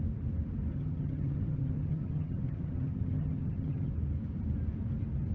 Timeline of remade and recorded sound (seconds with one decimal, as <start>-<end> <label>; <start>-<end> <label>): 0.0-0.7 recorded; 0.7-3.9 remade; 3.9-5.3 recorded